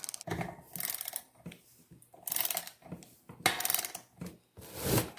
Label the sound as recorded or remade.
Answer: recorded